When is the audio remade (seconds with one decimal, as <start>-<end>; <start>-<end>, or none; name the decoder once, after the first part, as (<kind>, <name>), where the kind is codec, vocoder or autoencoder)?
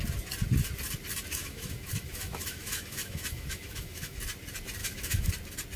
1.4-4.2 (autoencoder, DAC-VAE); 4.8-5.3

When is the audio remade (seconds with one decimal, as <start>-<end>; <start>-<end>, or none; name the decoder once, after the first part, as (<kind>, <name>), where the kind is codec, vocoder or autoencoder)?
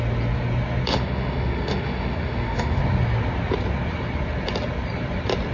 0.9-2.8 (autoencoder, DAC-VAE)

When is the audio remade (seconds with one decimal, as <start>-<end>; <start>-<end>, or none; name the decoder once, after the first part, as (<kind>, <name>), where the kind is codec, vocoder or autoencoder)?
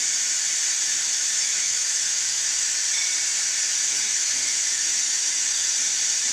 1.0-2.8 (autoencoder, DAC-VAE); 3.8-5.7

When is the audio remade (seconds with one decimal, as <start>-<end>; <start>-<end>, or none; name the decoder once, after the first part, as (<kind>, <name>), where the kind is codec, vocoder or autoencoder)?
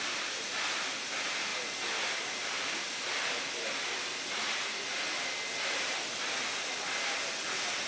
none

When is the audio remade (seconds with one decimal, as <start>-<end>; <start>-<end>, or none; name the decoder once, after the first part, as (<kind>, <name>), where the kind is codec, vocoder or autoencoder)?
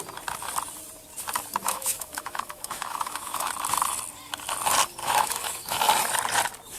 1.6-3.5 (autoencoder, DAC-VAE); 5.0-5.8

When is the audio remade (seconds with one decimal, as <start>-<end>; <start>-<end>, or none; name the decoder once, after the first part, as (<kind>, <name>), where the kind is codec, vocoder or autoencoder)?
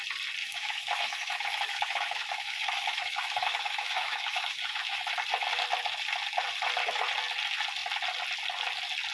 0.4-5.0 (autoencoder, DAC-VAE)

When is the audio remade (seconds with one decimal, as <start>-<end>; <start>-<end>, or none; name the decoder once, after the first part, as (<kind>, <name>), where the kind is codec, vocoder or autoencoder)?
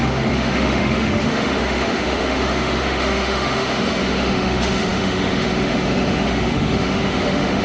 0.0-7.6 (autoencoder, DAC-VAE)